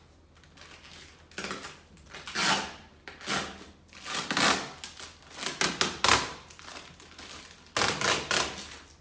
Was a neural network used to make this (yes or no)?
no